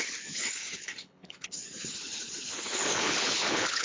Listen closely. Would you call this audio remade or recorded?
remade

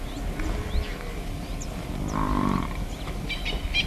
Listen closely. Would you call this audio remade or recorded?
recorded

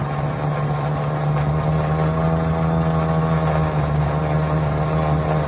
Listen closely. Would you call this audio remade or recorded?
recorded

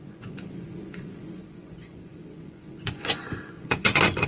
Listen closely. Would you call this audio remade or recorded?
remade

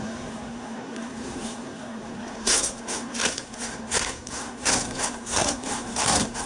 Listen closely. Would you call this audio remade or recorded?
remade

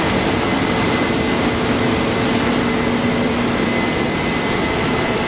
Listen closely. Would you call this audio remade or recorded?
recorded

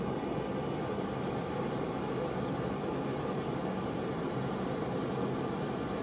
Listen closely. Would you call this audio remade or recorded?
recorded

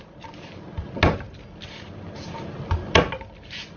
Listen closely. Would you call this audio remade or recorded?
recorded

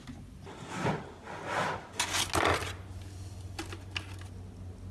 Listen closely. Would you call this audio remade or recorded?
recorded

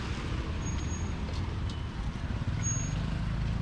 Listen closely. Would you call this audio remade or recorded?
recorded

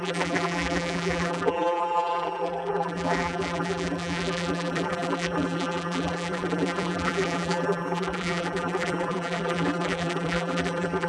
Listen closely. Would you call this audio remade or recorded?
remade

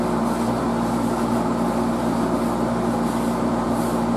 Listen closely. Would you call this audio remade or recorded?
recorded